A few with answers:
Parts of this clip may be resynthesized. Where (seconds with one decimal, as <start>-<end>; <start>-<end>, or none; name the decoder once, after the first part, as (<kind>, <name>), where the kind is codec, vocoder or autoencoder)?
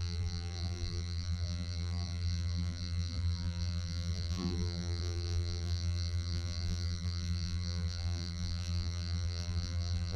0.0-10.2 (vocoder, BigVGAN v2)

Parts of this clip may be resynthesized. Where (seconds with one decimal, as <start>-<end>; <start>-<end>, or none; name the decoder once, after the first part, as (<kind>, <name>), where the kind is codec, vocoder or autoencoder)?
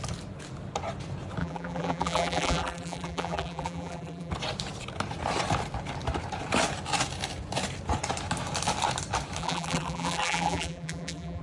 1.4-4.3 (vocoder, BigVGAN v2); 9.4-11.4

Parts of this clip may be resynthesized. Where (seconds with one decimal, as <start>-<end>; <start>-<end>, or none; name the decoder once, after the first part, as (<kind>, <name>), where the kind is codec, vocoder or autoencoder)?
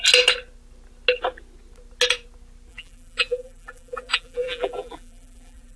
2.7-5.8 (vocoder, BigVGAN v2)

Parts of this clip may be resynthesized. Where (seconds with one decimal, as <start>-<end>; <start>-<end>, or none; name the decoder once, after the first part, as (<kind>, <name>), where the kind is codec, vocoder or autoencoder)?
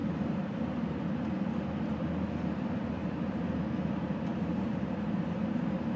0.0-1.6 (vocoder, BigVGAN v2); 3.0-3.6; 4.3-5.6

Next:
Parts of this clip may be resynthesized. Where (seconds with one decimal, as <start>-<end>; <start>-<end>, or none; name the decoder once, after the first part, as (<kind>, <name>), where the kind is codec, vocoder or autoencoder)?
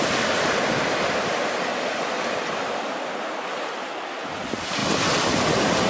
none